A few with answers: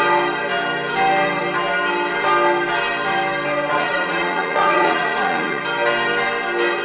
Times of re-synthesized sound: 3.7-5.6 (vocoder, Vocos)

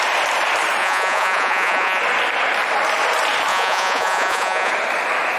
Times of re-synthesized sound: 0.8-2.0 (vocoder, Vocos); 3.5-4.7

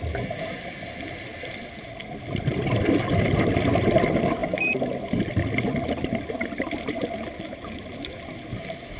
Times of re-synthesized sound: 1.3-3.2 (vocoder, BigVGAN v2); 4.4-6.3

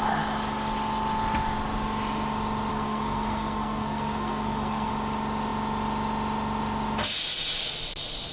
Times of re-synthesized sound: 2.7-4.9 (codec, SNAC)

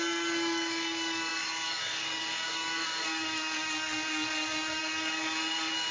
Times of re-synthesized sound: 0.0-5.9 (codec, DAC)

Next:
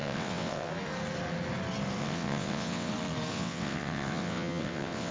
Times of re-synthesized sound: 0.0-0.7 (vocoder, WaveNeXt); 2.0-2.9; 3.3-5.1